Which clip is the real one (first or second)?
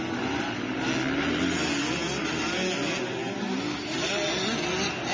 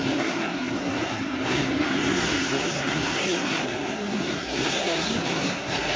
first